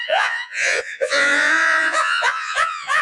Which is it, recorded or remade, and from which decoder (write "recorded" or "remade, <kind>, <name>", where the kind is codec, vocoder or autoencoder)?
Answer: remade, vocoder, Vocos